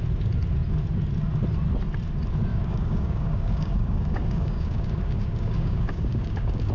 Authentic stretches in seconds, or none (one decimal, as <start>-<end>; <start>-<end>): 0.0-2.5